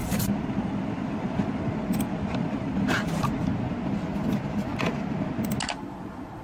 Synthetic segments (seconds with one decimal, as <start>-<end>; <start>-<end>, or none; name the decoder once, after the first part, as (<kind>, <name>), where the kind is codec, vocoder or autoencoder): 0.0-3.5 (vocoder, BigVGAN v2)